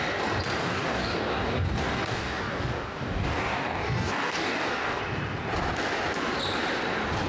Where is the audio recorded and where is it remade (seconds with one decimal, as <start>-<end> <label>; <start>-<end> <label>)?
0.0-0.6 recorded; 0.6-5.0 remade; 5.0-7.3 recorded